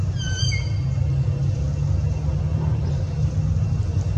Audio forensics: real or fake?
real